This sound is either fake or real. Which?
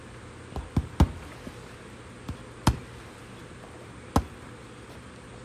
real